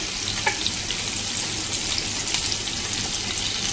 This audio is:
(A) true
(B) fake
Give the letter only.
A